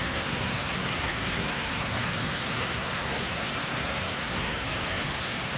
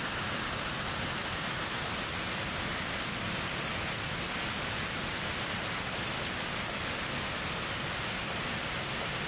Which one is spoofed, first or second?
first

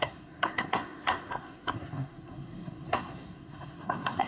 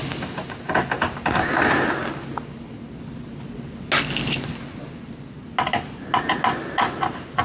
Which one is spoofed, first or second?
first